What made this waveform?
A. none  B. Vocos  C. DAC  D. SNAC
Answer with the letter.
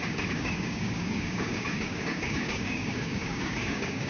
C